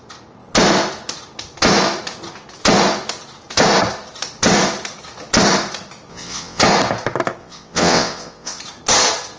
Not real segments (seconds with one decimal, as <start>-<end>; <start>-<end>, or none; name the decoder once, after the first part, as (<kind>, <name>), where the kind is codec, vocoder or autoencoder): 6.1-6.6 (vocoder, WaveNeXt); 7.4-8.6